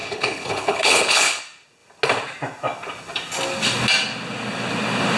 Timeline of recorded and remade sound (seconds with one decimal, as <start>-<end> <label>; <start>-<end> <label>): 0.0-1.4 remade; 1.4-5.2 recorded